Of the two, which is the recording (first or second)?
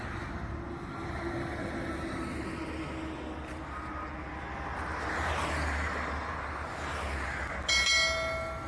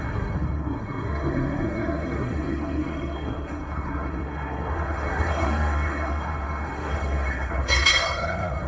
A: first